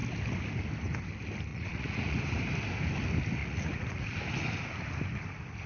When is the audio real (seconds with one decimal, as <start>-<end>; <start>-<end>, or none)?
0.0-1.5; 2.2-3.4; 4.2-5.7